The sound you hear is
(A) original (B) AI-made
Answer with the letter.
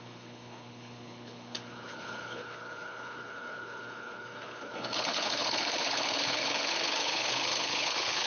B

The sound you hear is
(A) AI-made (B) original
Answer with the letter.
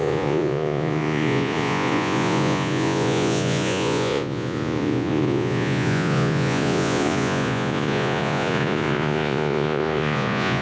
A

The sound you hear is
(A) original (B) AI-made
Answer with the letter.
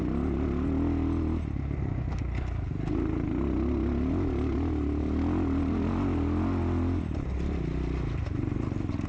A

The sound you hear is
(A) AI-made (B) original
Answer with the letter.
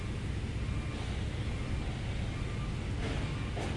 B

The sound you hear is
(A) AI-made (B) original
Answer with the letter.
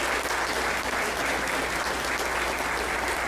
B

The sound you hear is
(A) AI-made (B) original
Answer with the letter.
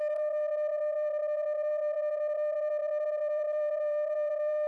A